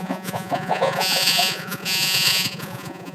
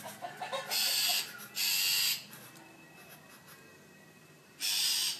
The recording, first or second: second